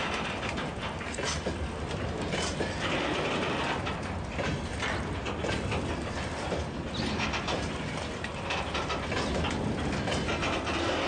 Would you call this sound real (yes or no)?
yes